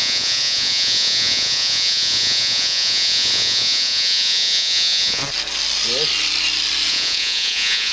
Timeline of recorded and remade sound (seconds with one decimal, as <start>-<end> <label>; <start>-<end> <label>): 0.0-5.2 remade; 5.2-6.9 recorded; 6.9-7.9 remade